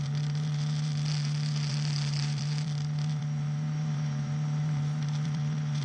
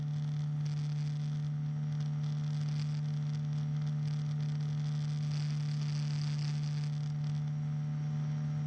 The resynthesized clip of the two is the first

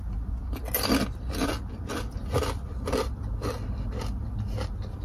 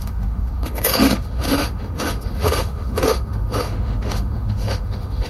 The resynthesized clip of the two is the second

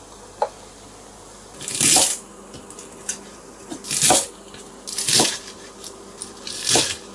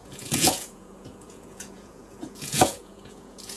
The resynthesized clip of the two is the second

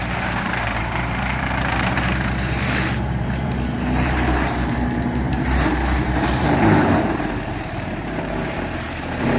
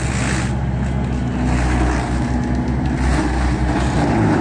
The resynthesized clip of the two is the first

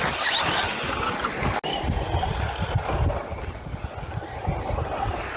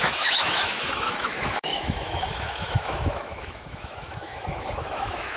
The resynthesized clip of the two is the second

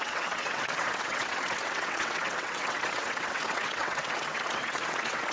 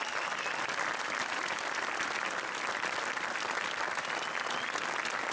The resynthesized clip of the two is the first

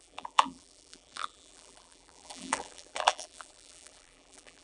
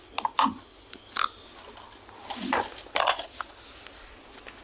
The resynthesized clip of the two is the first